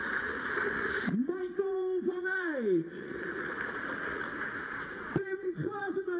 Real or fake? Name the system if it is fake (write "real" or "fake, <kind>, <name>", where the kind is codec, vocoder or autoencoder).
fake, vocoder, Vocos